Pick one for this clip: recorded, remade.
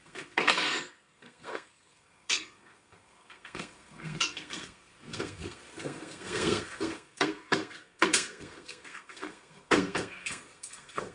remade